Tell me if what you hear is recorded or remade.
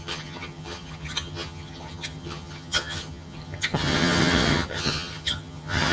remade